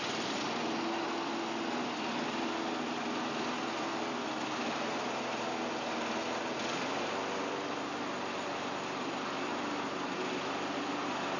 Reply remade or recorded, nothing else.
recorded